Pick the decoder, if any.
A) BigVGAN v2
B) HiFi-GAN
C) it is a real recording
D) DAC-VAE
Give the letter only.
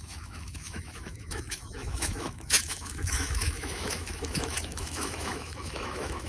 D